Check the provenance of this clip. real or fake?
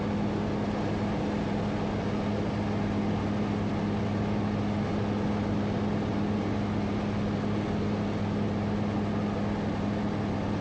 real